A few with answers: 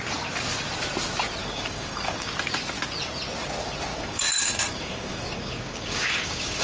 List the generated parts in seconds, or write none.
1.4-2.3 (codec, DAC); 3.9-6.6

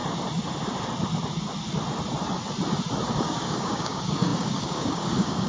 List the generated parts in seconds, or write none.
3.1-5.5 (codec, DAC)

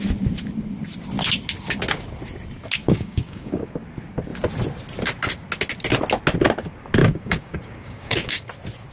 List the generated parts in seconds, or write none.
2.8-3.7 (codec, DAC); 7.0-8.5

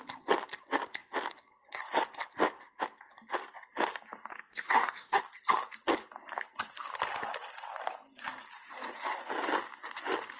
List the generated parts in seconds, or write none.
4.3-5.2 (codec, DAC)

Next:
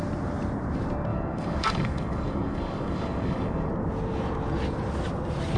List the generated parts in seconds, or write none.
1.1-3.7 (codec, DAC)